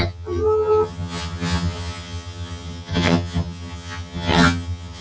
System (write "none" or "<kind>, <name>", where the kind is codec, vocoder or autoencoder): vocoder, HiFi-GAN